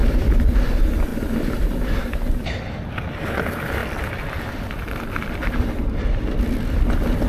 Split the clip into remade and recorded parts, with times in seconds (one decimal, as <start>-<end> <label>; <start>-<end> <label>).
0.0-1.1 recorded; 1.1-2.7 remade; 2.7-3.8 recorded; 3.8-7.3 remade